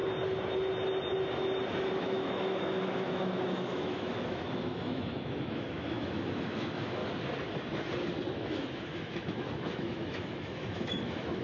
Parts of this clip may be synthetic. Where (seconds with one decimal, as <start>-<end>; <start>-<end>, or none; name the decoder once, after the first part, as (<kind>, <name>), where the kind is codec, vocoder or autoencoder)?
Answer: 2.0-7.0 (autoencoder, DAC-VAE); 8.3-11.4